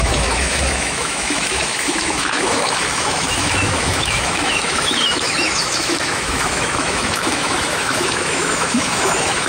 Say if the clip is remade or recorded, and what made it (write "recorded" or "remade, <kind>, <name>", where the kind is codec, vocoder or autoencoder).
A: remade, autoencoder, DAC-VAE